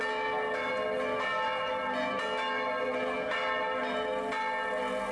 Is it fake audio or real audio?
real